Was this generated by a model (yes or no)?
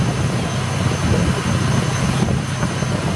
no